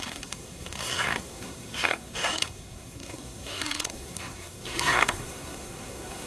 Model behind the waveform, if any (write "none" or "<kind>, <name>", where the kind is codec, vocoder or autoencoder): codec, SNAC